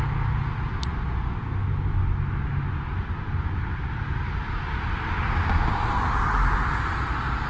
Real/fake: real